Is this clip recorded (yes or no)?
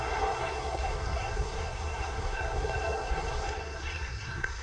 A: no